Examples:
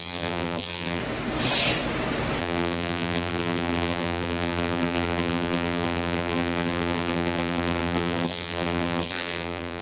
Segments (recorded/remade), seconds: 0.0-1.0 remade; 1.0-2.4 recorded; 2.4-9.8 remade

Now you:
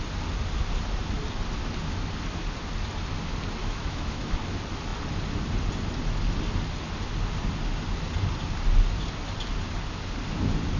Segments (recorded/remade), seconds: 0.0-3.6 recorded; 3.6-4.4 remade; 4.4-10.8 recorded

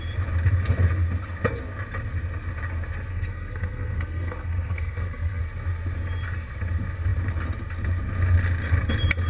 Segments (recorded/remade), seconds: 0.0-3.1 recorded; 3.1-5.4 remade; 5.4-9.3 recorded

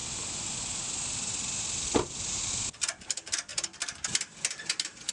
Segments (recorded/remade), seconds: 0.0-5.1 recorded

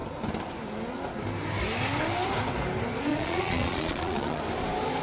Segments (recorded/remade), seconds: 0.0-3.1 recorded; 3.1-4.4 remade; 4.4-5.0 recorded

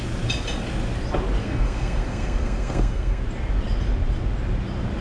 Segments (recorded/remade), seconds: 0.0-1.4 recorded; 1.4-3.2 remade; 3.2-5.0 recorded

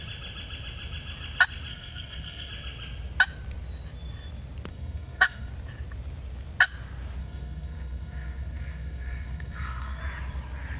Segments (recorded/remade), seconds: 0.0-1.7 recorded; 1.7-2.5 remade; 2.5-4.7 recorded; 4.7-5.5 remade; 5.5-7.2 recorded; 7.2-10.0 remade; 10.0-10.8 recorded